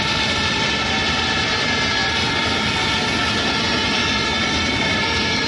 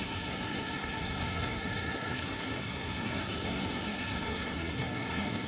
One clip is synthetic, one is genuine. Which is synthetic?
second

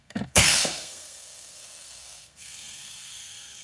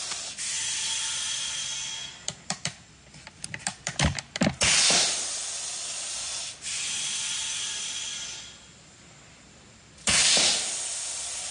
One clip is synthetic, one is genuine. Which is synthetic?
first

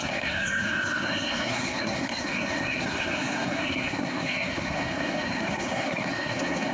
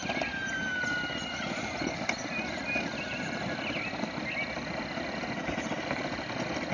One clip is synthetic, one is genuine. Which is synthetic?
first